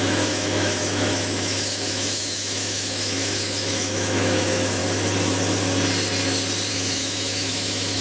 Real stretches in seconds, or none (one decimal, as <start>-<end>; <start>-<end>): 4.8-6.7